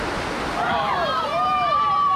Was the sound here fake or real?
fake